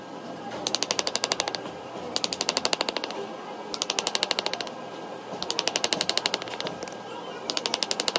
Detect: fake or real real